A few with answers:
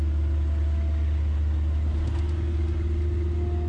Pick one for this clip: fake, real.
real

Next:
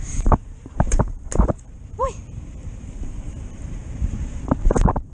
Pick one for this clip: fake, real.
fake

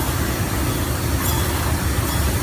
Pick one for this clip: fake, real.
real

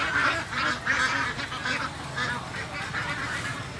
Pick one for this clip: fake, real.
real